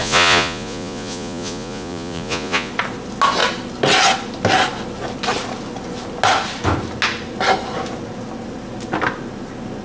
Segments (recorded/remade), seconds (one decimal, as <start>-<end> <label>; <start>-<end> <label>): 0.0-2.7 remade; 2.7-9.8 recorded